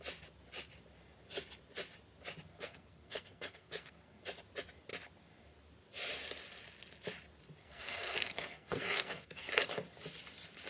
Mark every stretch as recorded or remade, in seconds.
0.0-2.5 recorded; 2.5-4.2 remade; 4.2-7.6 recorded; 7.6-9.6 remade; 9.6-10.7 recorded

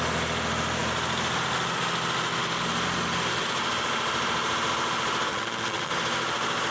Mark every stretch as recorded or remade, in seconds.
0.0-5.3 recorded; 5.3-5.9 remade; 5.9-6.7 recorded

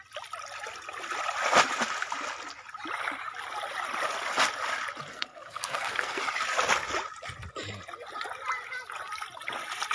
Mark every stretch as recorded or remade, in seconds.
0.0-5.1 recorded; 5.1-6.2 remade; 6.2-9.9 recorded

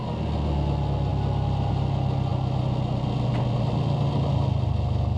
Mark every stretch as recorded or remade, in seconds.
0.0-5.2 recorded

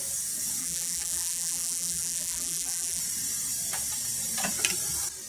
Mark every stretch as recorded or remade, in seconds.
0.0-0.6 recorded; 0.6-3.0 remade; 3.0-5.3 recorded

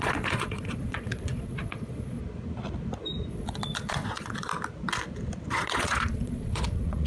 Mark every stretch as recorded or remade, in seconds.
0.0-2.2 remade; 2.2-3.3 recorded; 3.3-4.5 remade; 4.5-5.5 recorded; 5.5-7.1 remade

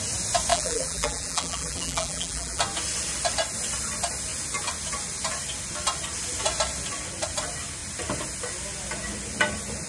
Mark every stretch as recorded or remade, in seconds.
0.0-0.5 recorded; 0.5-2.6 remade; 2.6-9.9 recorded